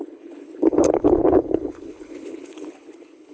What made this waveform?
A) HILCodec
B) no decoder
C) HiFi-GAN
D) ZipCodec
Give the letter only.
A